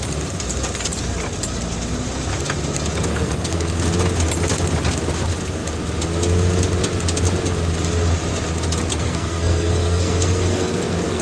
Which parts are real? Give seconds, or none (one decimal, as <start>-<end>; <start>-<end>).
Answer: 0.0-3.1; 3.8-8.9